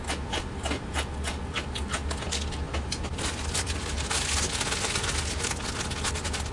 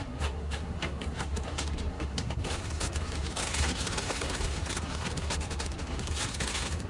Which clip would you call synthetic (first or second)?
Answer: second